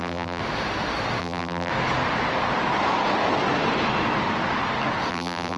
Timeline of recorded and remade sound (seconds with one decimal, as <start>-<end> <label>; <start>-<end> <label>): 0.0-0.4 remade; 0.4-1.2 recorded; 1.2-1.7 remade; 1.7-5.1 recorded; 5.1-5.6 remade